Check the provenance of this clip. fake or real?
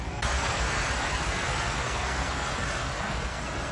fake